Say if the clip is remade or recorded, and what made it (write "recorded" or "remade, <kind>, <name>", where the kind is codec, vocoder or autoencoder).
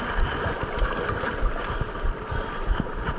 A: recorded